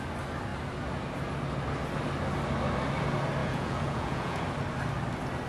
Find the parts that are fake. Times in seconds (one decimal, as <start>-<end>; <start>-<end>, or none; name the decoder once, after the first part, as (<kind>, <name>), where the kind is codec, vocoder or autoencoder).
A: 3.4-4.4 (vocoder, Vocos)